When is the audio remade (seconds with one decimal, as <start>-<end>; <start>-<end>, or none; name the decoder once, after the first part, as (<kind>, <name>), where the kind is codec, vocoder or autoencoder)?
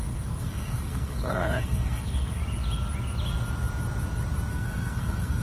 0.0-2.4 (codec, SNAC); 4.5-5.4